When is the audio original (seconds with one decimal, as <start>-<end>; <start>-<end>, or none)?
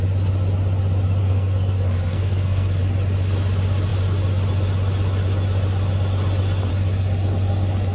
0.0-1.2; 2.8-7.9